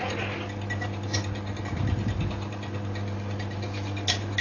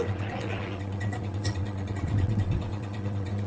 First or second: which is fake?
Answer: second